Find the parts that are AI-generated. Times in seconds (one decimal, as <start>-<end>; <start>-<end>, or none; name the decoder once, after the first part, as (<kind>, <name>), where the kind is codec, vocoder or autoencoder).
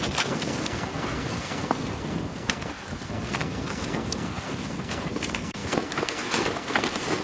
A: 0.0-7.2 (codec, SNAC)